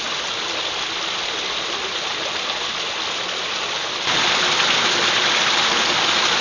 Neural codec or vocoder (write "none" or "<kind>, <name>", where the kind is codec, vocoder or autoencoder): none